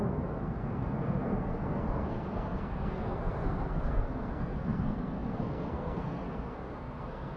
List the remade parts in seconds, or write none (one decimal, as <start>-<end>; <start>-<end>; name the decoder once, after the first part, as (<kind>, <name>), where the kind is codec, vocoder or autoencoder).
0.0-7.4 (codec, SNAC)

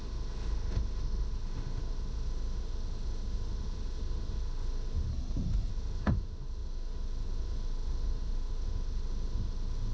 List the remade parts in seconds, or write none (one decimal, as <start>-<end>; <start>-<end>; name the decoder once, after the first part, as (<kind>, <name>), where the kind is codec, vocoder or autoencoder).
0.0-5.1 (autoencoder, DAC-VAE); 5.7-9.9